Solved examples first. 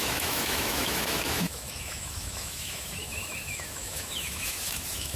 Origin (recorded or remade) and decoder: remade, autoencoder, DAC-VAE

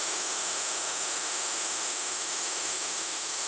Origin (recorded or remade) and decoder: remade, autoencoder, DAC-VAE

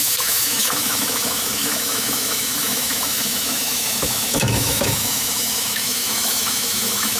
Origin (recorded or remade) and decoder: remade, autoencoder, DAC-VAE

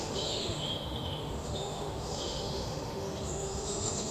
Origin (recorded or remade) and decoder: remade, autoencoder, DAC-VAE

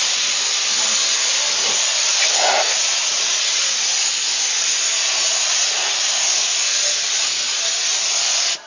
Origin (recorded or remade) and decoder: recorded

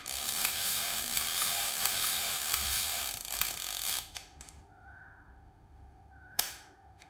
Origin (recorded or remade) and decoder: remade, autoencoder, DAC-VAE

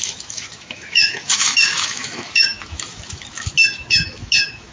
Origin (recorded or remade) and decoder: remade, autoencoder, DAC-VAE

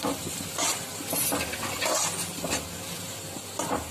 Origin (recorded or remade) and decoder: recorded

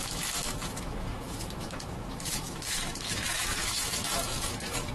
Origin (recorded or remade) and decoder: remade, autoencoder, DAC-VAE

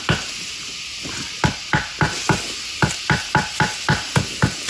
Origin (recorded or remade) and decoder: recorded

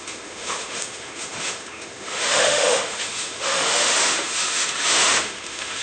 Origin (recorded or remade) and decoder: remade, autoencoder, DAC-VAE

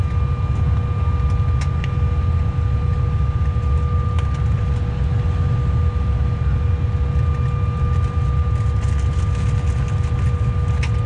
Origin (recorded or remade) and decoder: recorded